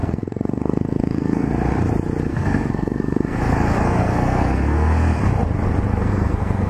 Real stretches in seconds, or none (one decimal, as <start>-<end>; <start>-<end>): 1.5-2.3; 5.3-5.9